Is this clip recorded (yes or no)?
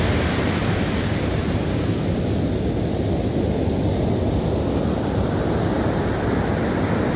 yes